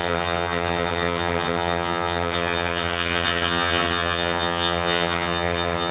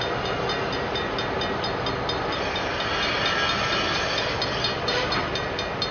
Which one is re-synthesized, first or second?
first